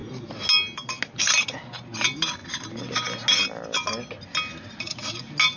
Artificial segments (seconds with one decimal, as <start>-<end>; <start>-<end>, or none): none